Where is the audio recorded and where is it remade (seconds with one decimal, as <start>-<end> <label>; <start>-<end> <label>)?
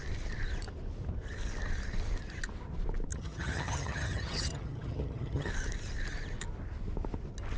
0.0-3.1 recorded; 3.1-5.5 remade; 5.5-7.6 recorded